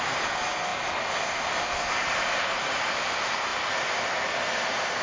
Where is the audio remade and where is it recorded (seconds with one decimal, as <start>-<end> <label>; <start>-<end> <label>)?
0.0-5.0 recorded